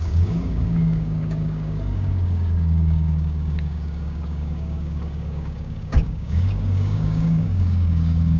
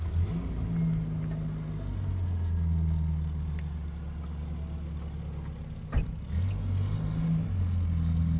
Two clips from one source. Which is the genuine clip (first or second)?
second